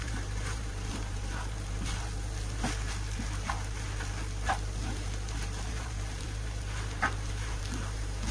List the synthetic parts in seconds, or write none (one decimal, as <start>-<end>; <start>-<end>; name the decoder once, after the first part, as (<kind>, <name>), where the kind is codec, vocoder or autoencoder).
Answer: 0.0-1.3 (vocoder, BigVGAN v2); 5.7-8.3